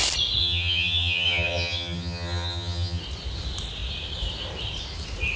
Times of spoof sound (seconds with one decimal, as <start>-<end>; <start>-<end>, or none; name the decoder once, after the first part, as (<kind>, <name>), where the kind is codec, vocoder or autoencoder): 0.4-3.0 (vocoder, HiFi-GAN)